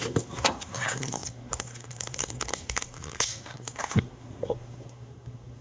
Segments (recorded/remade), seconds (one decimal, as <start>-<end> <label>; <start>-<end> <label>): 0.0-5.6 remade